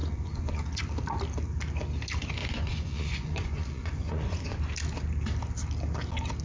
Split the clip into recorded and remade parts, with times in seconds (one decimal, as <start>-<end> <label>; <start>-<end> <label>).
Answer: 0.0-0.8 remade; 0.8-2.4 recorded; 2.4-4.6 remade; 4.6-6.4 recorded